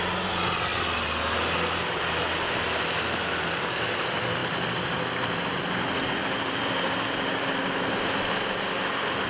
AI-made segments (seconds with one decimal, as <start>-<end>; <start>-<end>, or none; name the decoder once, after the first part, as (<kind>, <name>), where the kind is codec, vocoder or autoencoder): none